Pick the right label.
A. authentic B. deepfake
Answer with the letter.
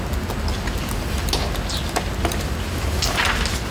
A